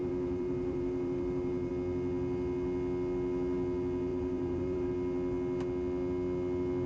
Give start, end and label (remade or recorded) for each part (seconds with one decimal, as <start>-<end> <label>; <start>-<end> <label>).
0.0-1.7 remade; 1.7-4.1 recorded; 4.1-4.9 remade; 4.9-6.9 recorded